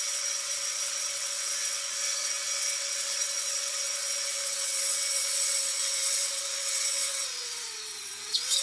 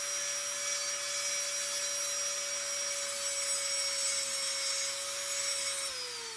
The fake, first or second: first